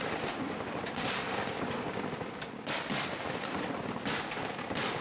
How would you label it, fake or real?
real